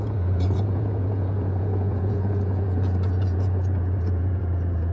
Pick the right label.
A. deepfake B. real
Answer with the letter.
A